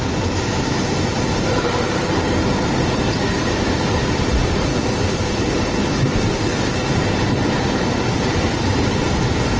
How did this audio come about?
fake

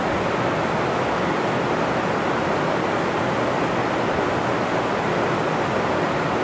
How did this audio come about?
real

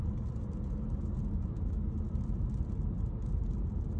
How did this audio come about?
real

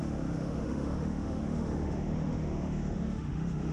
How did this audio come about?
fake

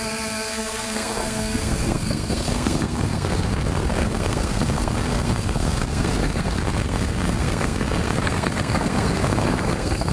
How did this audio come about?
fake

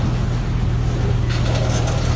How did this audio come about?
real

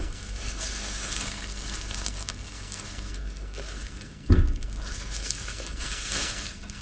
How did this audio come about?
fake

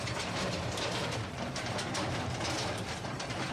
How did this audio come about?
fake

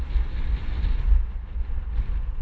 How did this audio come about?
real